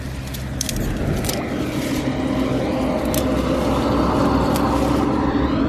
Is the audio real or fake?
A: real